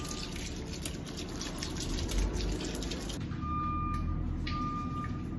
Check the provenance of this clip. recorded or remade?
recorded